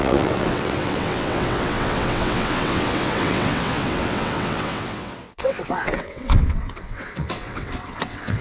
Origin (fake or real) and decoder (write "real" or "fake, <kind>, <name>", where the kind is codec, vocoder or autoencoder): fake, vocoder, WaveNeXt